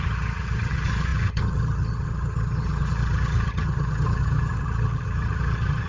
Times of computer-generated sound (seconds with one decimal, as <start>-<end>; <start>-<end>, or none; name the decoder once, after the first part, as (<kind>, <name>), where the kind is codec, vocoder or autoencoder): 0.0-5.9 (vocoder, HiFi-GAN)